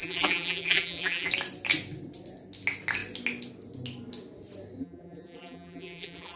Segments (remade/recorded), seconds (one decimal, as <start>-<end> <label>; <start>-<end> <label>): 0.0-1.3 remade; 1.3-4.8 recorded; 4.8-6.4 remade